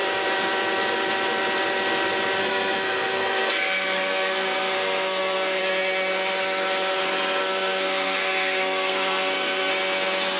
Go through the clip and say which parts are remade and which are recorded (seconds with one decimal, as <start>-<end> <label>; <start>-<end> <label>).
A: 0.0-2.4 recorded; 2.4-5.6 remade; 5.6-7.4 recorded; 7.4-9.7 remade; 9.7-10.4 recorded